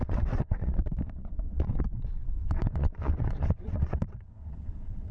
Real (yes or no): no